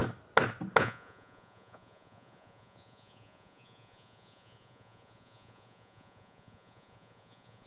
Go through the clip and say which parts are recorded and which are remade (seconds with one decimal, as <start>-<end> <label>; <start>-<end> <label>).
0.0-0.8 recorded; 0.8-7.7 remade